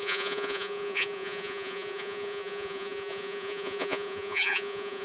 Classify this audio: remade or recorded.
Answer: remade